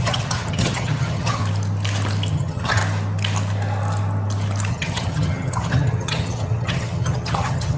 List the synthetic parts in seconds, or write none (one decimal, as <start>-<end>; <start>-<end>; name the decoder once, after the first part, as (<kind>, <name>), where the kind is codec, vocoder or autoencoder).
0.0-1.4 (vocoder, HiFi-GAN); 2.3-2.8; 4.7-7.8